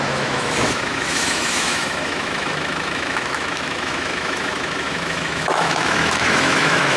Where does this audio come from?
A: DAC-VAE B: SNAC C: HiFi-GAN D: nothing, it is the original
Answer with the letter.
A